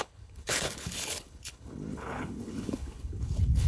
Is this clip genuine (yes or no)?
no